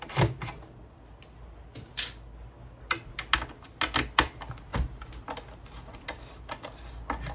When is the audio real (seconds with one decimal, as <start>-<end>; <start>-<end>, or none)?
0.0-7.3